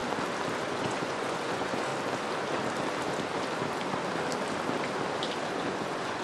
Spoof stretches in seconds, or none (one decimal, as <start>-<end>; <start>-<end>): 0.7-1.9; 5.6-6.2